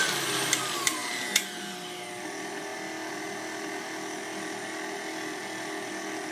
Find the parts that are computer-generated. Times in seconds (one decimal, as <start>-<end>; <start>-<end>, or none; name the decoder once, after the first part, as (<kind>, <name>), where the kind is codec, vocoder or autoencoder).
none